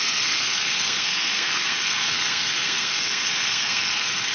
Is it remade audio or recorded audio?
remade